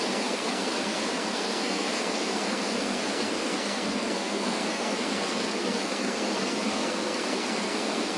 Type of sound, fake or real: fake